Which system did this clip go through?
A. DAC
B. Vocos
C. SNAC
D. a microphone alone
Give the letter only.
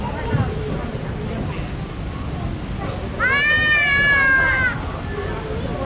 D